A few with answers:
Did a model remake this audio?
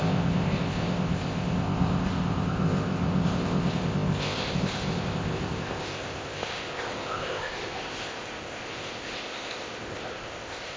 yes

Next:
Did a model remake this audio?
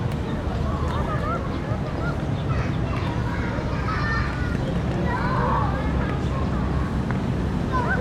no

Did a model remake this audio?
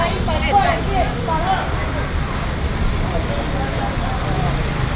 no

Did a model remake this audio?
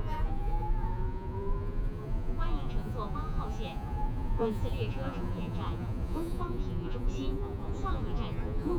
yes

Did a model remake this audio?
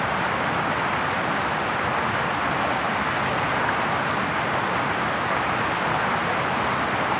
no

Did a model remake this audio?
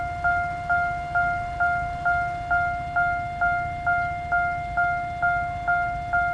no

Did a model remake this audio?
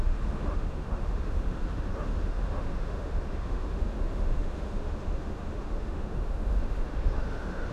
yes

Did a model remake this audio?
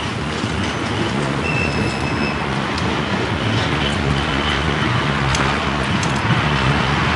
yes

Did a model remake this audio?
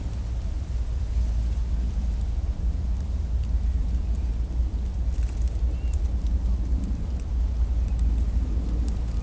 no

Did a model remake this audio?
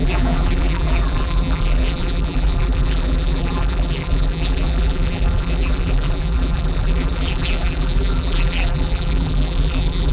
yes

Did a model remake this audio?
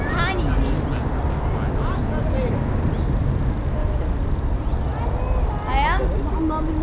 no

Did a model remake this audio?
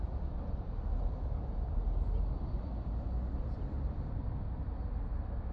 no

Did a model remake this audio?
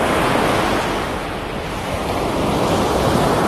no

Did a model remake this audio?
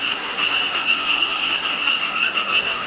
yes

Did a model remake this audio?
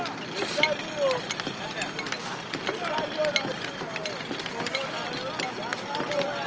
no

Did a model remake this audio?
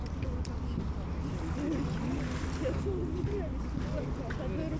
no